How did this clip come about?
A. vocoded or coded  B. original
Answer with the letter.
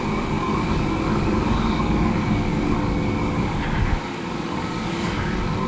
A